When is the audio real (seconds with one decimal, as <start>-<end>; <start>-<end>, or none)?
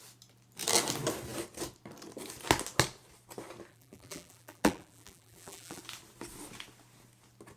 0.0-3.7; 5.8-7.6